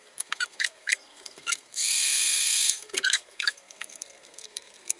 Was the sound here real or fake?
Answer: fake